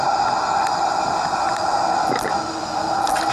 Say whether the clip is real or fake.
real